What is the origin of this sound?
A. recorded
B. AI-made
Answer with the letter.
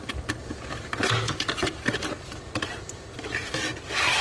A